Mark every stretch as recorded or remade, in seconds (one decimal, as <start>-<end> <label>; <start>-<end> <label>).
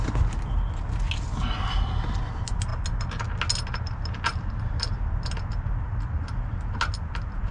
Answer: 0.0-7.5 recorded